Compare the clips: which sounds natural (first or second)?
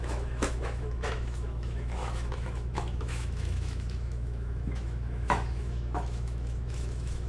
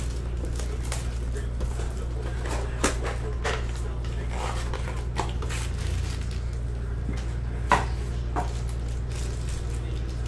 second